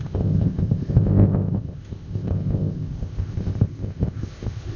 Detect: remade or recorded remade